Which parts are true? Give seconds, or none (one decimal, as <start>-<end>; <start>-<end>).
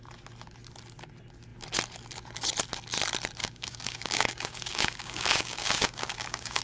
0.0-3.4